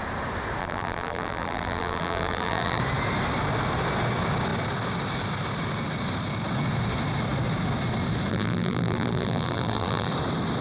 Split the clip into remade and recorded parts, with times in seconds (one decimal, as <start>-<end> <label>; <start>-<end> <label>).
0.0-0.6 recorded; 0.6-2.8 remade; 2.8-8.3 recorded; 8.3-10.1 remade; 10.1-10.6 recorded